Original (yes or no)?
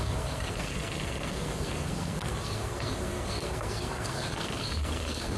no